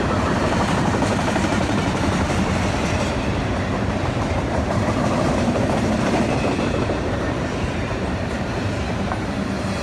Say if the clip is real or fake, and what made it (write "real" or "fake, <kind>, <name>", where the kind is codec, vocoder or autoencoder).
fake, vocoder, BigVGAN v2